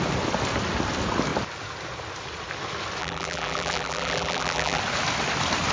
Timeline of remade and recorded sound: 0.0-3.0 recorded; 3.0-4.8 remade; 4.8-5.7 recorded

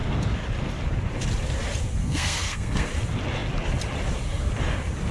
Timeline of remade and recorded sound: 0.0-2.0 recorded; 2.0-2.9 remade; 2.9-5.1 recorded

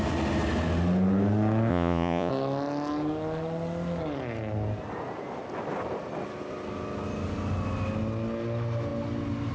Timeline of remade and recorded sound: 0.0-1.7 recorded; 1.7-2.3 remade; 2.3-9.5 recorded

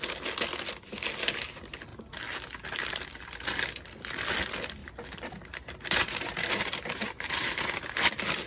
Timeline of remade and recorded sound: 0.0-4.8 recorded; 4.8-8.1 remade; 8.1-8.5 recorded